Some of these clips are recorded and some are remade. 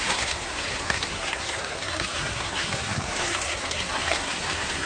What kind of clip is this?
remade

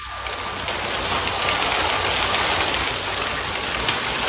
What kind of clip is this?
recorded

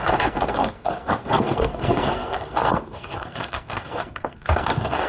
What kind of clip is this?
remade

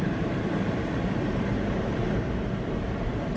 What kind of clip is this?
remade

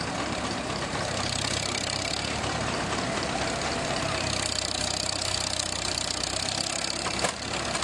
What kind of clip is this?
remade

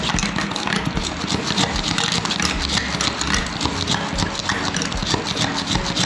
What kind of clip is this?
recorded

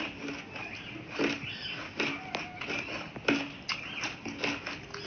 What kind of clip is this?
recorded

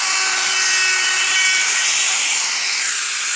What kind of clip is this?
recorded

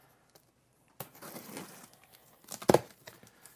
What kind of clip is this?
recorded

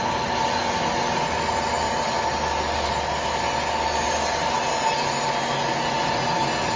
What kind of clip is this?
recorded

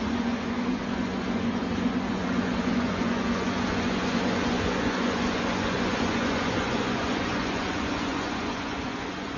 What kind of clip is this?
remade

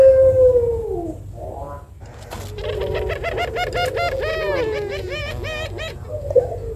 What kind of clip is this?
recorded